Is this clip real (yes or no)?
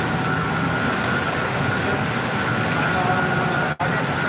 yes